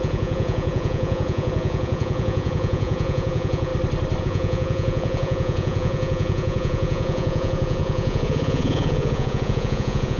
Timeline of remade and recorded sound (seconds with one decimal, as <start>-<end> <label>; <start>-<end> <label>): 0.0-3.7 remade; 3.7-4.2 recorded; 4.2-10.2 remade